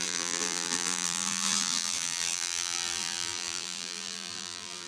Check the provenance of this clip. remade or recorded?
remade